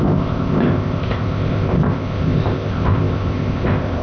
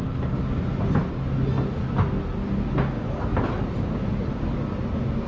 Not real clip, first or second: first